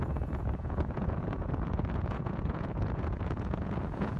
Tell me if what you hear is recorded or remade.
remade